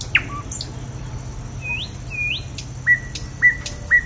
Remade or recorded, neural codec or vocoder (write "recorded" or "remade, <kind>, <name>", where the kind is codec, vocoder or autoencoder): recorded